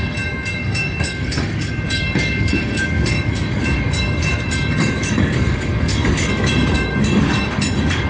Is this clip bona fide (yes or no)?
no